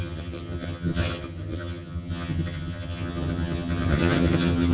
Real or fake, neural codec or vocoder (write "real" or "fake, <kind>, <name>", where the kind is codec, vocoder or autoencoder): fake, vocoder, HiFi-GAN